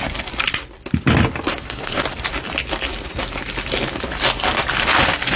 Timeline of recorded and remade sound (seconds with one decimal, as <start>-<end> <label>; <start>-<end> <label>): 0.0-1.5 recorded; 1.5-2.0 remade; 2.0-5.4 recorded